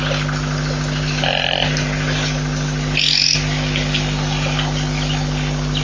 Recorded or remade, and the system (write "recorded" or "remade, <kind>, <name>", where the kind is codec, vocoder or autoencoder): recorded